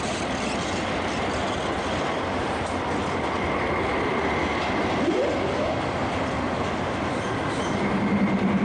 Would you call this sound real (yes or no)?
yes